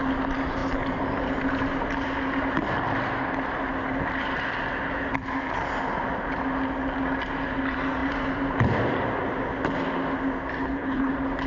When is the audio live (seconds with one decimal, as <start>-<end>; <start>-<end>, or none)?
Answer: 0.0-10.6; 11.1-11.5

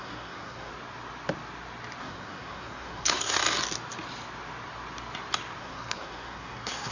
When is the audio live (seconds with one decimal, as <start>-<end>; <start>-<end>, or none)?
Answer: 0.7-2.0; 3.4-5.6

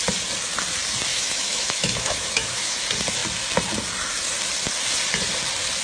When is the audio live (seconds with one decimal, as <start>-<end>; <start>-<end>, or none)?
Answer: 0.0-1.1; 2.8-5.8

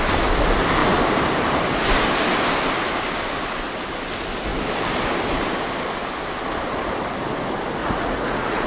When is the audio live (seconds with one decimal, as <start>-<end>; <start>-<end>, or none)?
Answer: 0.0-7.8

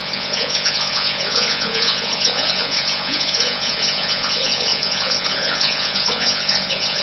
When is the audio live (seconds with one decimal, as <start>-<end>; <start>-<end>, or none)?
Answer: none

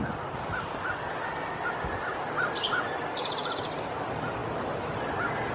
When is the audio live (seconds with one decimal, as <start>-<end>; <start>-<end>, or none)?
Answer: 0.0-5.5

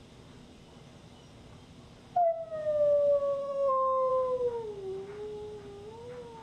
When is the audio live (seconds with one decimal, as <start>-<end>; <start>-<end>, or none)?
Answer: 0.0-3.4; 4.1-6.4

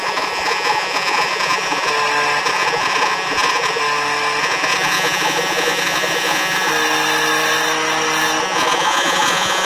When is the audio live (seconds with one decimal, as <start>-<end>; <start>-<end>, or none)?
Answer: 1.9-2.4; 3.8-4.4; 6.7-8.4